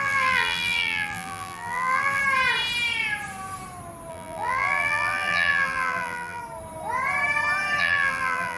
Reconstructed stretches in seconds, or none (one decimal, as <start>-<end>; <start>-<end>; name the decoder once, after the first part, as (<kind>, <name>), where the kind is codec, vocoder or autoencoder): 0.0-2.2 (vocoder, BigVGAN v2); 4.1-6.4; 7.8-8.6